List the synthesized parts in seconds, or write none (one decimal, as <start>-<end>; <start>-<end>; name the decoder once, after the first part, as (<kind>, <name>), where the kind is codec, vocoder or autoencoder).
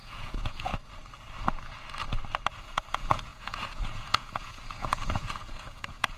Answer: 0.0-0.7 (vocoder, Vocos); 2.6-6.2